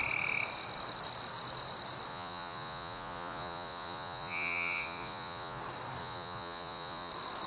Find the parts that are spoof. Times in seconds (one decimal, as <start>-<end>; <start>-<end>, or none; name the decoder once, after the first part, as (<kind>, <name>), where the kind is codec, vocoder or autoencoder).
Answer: 2.1-5.6 (vocoder, Vocos); 6.0-7.1